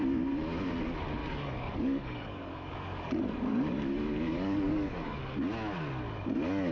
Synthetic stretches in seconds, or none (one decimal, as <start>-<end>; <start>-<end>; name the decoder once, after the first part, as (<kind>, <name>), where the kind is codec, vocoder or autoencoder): 1.2-5.2 (codec, DAC)